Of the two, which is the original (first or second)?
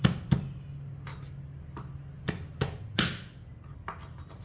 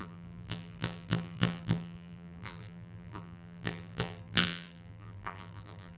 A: first